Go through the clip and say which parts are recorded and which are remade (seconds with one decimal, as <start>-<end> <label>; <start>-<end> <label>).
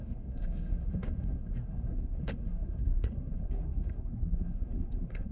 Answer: 0.0-5.3 remade